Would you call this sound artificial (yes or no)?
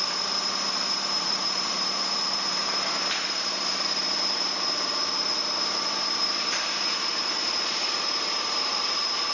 yes